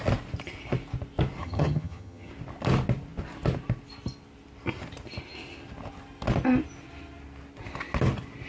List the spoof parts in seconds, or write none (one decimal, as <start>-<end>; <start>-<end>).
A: 1.4-2.3